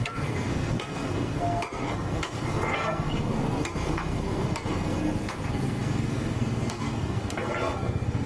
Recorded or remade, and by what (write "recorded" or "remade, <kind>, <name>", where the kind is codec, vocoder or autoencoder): remade, codec, SNAC